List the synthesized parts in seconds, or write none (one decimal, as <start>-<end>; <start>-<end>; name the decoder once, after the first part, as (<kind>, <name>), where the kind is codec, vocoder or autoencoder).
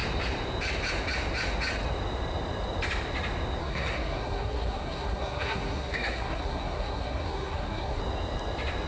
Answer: 3.6-8.0 (codec, SNAC)